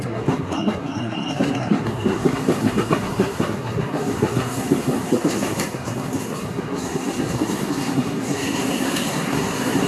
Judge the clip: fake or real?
fake